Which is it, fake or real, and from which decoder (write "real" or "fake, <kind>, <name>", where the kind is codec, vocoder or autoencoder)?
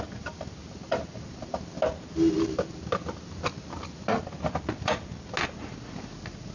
real